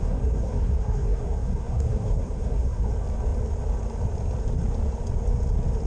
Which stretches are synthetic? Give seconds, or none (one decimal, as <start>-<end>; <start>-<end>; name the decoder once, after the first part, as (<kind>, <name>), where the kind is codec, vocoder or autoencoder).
0.0-2.9 (codec, SNAC)